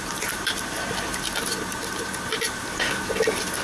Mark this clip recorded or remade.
remade